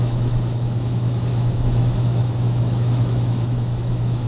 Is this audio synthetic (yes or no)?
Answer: yes